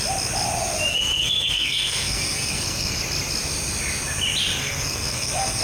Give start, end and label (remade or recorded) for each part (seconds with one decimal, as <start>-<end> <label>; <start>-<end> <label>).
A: 0.0-0.9 recorded; 0.9-3.0 remade; 3.0-4.6 recorded; 4.6-5.6 remade